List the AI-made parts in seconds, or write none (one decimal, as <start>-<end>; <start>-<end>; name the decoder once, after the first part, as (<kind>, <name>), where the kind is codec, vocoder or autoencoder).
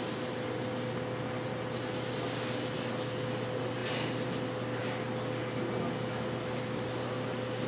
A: none